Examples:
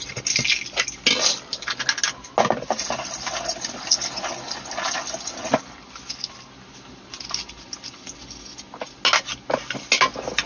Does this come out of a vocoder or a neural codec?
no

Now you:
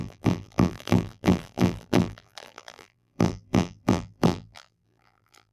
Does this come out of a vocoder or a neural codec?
yes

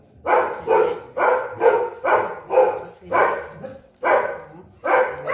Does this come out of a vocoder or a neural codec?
no